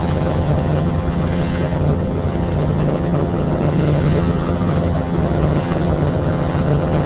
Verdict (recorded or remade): remade